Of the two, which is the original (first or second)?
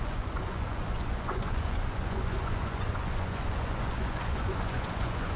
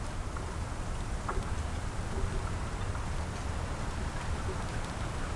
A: second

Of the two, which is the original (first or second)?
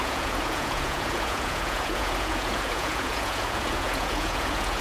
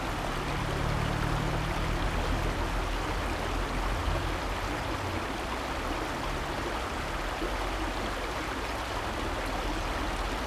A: second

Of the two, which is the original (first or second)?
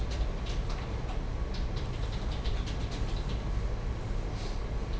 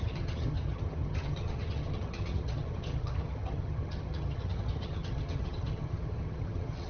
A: first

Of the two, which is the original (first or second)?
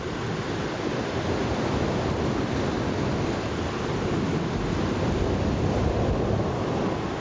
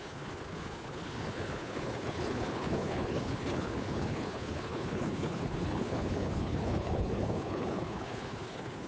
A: first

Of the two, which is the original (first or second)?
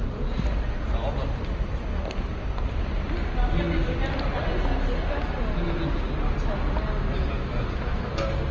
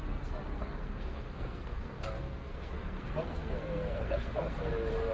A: first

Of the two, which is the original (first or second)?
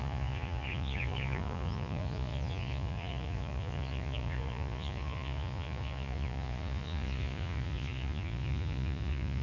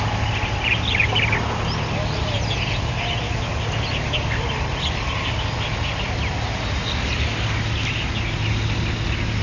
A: second